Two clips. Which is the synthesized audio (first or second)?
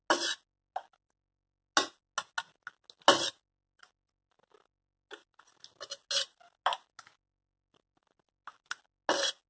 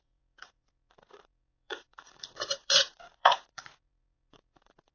second